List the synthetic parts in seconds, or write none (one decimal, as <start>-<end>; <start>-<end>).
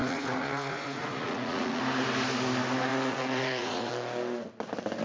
0.0-1.8; 2.9-3.9